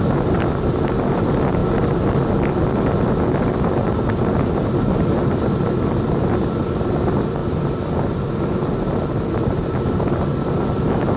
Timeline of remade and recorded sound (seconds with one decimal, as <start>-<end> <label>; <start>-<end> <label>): 0.0-11.2 recorded